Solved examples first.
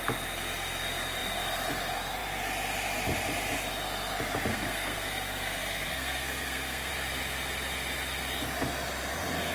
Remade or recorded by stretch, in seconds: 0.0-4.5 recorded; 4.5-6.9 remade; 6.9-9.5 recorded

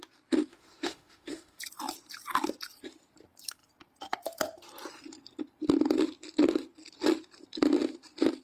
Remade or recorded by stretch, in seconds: 0.0-0.5 recorded; 0.5-1.6 remade; 1.6-8.4 recorded